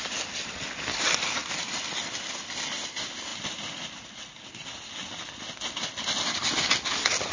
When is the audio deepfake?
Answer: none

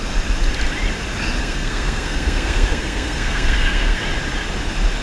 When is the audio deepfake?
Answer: 1.4-4.0 (codec, SNAC)

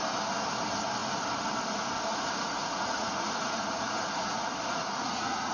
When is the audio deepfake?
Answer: 2.1-5.5 (vocoder, Vocos)